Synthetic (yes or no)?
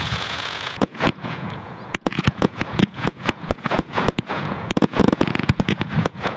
yes